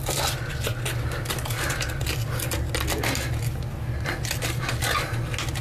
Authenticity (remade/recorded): recorded